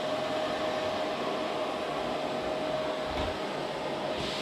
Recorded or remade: recorded